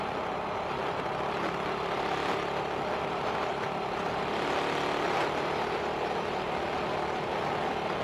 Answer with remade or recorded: recorded